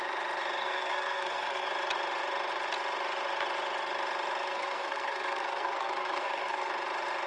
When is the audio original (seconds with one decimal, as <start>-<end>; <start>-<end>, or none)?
0.0-0.6; 1.7-4.4; 6.7-7.3